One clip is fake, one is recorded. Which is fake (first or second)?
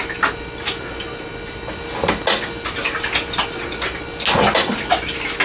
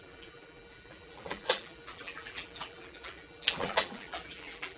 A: second